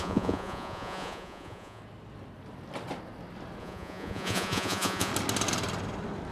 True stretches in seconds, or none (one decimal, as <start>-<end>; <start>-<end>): 1.8-3.6; 5.1-6.3

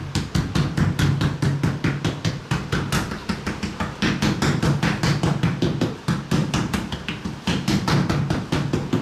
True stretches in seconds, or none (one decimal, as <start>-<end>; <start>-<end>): 0.0-6.4; 7.7-9.0

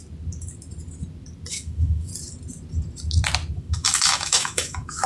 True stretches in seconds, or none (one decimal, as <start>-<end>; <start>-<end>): 0.0-1.5; 2.1-3.6